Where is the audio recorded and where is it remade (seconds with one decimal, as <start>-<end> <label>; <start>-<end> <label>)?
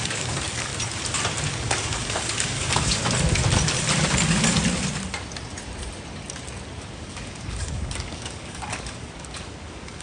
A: 0.0-0.7 remade; 0.7-1.5 recorded; 1.5-3.0 remade; 3.0-6.9 recorded; 6.9-10.0 remade